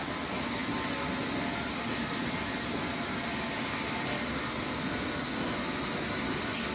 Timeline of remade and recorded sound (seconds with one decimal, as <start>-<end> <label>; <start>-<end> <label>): 0.0-6.7 recorded